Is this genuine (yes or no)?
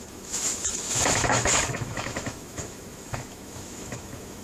no